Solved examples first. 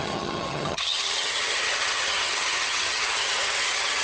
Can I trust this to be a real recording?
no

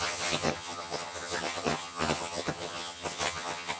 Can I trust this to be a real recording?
no